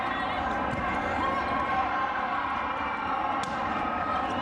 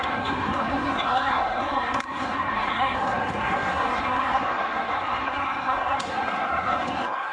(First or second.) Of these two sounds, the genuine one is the first